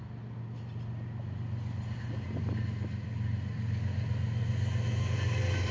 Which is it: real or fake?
real